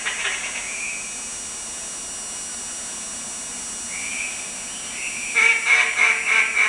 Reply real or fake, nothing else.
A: real